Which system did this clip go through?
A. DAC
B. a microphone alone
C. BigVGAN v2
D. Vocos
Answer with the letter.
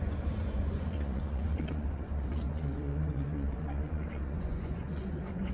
D